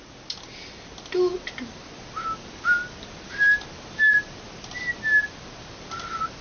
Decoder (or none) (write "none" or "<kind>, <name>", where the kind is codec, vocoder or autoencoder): none